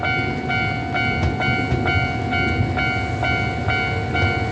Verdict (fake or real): real